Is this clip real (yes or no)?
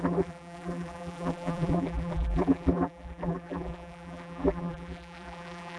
no